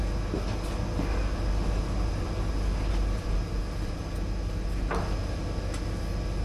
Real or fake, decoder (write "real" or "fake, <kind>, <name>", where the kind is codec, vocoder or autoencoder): real